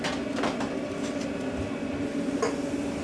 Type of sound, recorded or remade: recorded